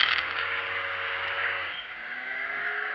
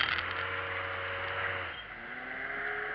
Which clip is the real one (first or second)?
second